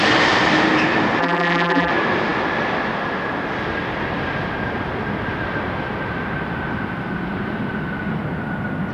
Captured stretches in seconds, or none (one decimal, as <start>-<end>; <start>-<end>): 0.0-1.2; 1.9-8.9